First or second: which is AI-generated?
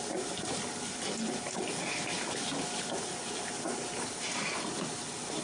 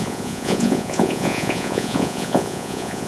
second